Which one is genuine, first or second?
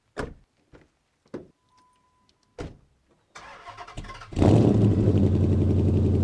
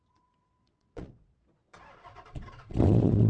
first